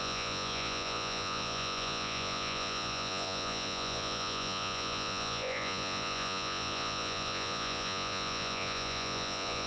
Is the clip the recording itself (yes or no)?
no